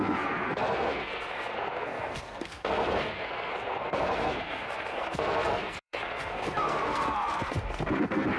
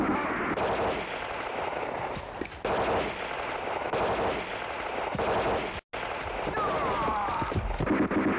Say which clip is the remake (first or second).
first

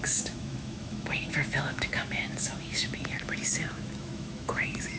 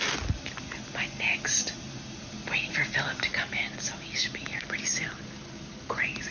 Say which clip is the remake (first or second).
first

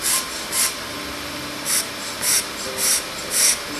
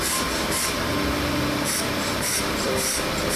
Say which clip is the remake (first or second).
second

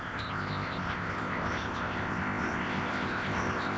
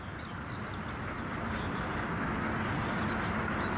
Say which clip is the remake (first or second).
first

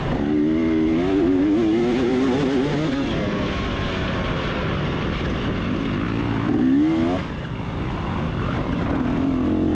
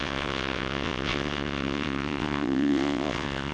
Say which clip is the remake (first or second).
second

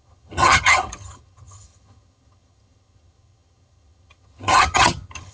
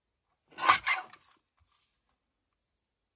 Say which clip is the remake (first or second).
first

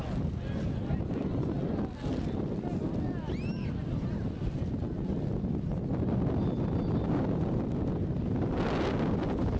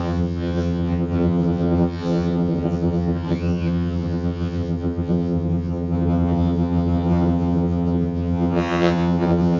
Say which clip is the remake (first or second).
second